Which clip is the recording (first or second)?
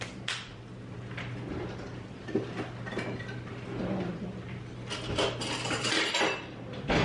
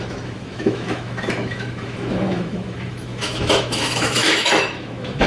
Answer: first